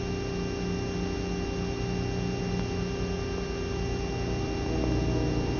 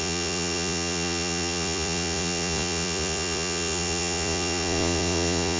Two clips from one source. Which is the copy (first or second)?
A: second